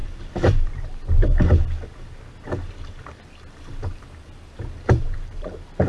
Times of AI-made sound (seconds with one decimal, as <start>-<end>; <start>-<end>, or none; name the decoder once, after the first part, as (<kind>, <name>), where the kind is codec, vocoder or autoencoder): 0.0-1.3 (vocoder, BigVGAN v2); 4.8-5.9